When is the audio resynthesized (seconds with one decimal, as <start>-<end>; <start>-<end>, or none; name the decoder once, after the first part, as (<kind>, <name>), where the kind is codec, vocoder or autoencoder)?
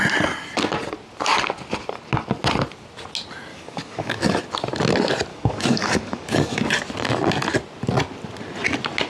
3.5-4.4 (codec, DAC); 5.3-6.7